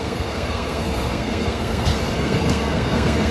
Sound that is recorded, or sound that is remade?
remade